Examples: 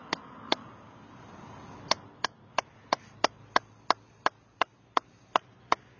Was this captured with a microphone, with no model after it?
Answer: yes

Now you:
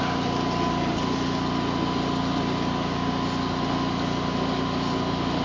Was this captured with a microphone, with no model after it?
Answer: yes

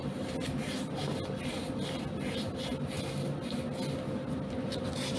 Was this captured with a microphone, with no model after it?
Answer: yes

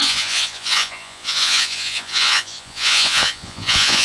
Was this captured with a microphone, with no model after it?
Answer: no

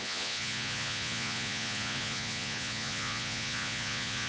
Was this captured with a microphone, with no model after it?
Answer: no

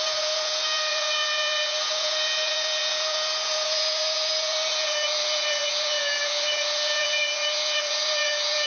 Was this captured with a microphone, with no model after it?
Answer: no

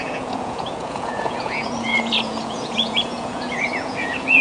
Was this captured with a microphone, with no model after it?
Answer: no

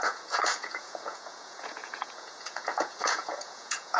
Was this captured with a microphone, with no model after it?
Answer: no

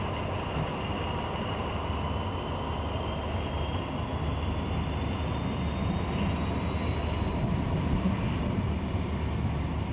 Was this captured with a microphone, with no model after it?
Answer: yes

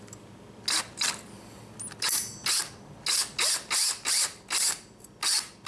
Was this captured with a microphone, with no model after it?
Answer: yes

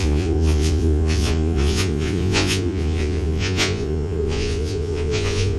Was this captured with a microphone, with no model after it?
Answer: no